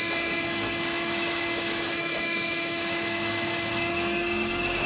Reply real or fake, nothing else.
fake